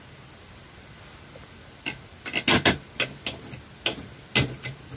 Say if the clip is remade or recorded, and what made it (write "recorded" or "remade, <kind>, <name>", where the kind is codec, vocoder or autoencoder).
recorded